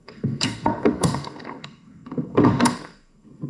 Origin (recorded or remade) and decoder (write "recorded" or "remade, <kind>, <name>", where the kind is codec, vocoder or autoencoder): remade, codec, SNAC